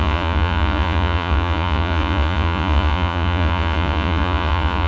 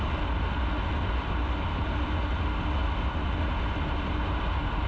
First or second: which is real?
second